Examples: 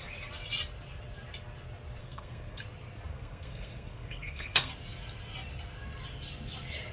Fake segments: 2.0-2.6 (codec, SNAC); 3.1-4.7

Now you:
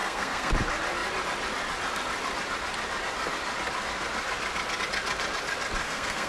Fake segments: 0.0-0.5 (codec, SNAC); 5.8-6.3

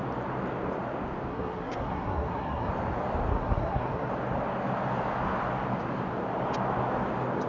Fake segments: 1.3-2.7 (codec, SNAC); 3.3-4.1